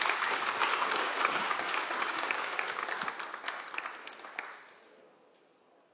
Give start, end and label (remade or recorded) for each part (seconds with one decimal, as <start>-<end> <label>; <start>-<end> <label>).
0.0-2.8 remade; 2.8-5.9 recorded